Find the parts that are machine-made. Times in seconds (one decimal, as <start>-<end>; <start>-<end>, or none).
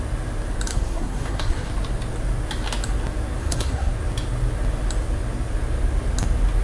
0.7-1.7; 3.4-3.9